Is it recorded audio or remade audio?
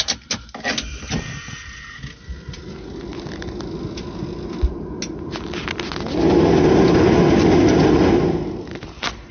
recorded